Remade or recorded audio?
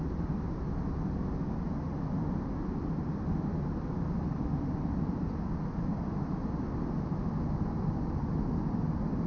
recorded